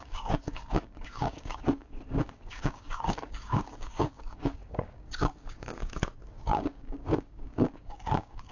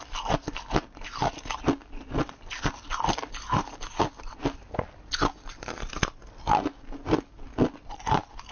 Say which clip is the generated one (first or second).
first